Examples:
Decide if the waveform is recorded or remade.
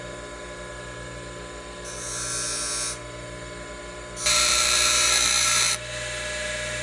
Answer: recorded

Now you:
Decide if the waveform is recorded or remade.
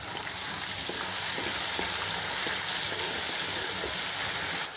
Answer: recorded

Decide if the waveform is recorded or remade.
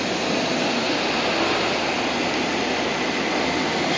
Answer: recorded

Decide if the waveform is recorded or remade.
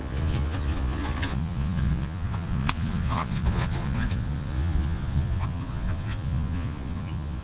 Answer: remade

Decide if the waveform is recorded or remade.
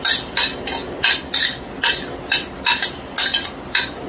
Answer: recorded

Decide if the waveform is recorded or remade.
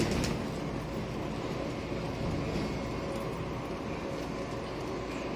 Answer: recorded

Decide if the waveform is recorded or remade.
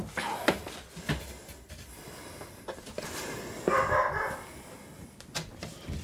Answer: recorded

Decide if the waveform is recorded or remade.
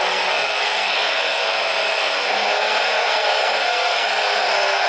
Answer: remade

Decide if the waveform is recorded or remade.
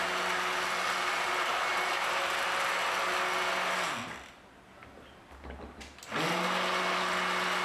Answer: recorded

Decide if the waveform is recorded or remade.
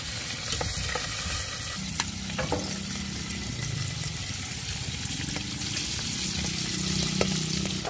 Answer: recorded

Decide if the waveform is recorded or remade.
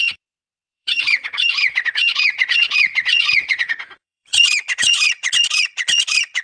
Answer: remade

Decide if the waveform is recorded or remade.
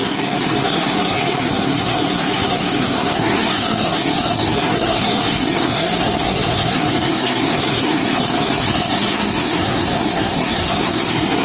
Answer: remade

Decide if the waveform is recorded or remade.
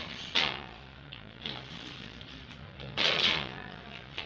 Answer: remade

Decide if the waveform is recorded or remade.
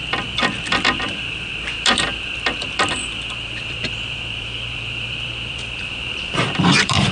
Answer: remade